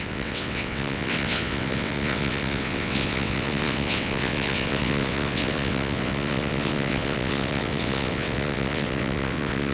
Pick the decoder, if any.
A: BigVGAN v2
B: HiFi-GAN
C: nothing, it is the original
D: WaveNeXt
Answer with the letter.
D